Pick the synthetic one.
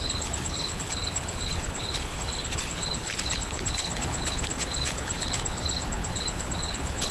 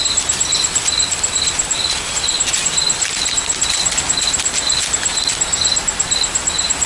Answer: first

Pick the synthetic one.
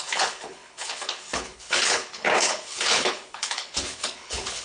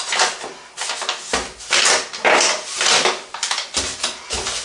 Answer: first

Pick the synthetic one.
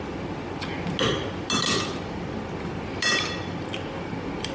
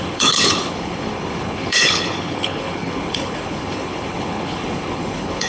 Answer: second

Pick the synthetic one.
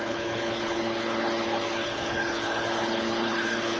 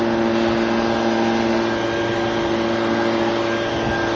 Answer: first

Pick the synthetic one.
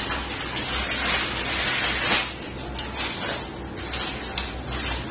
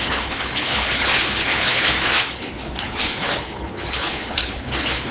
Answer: second